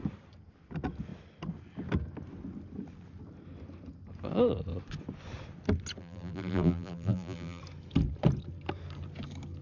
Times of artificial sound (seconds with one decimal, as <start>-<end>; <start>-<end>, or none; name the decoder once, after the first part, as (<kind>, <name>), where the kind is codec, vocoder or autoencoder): 6.0-7.6 (vocoder, BigVGAN v2)